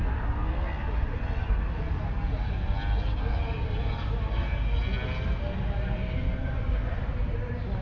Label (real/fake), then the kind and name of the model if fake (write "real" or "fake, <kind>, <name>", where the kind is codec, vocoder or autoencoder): real